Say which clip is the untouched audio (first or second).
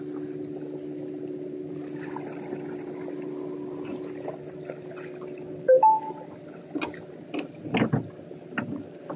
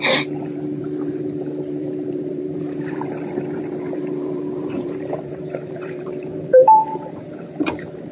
first